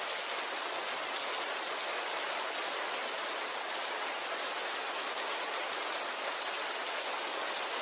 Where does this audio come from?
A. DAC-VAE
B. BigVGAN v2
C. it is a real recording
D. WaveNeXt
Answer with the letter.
C